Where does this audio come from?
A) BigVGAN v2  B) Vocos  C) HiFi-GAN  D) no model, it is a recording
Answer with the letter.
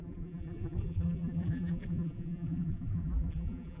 A